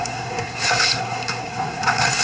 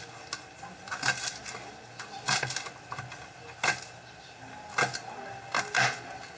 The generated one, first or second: first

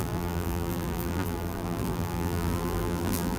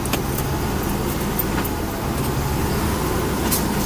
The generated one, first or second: first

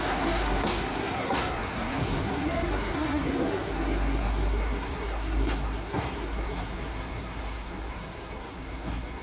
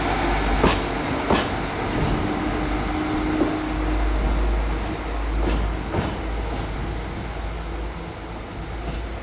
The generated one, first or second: first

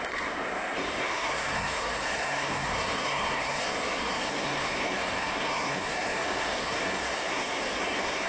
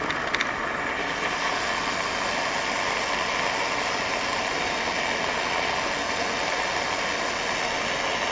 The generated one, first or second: first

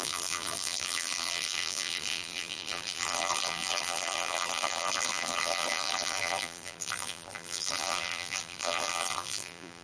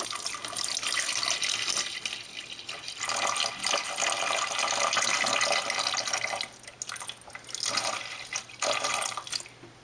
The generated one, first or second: first